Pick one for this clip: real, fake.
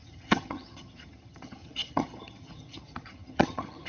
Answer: fake